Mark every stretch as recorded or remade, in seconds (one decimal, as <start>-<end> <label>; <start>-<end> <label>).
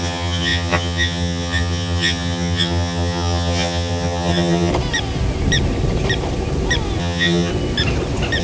0.0-4.7 remade; 4.7-7.0 recorded; 7.0-7.5 remade; 7.5-8.4 recorded